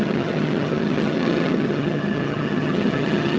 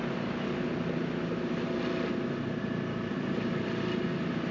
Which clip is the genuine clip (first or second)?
second